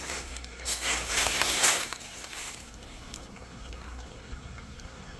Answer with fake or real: fake